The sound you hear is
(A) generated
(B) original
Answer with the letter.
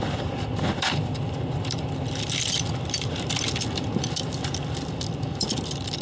A